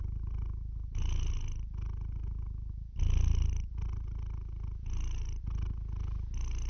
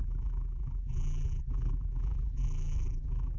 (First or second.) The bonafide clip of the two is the first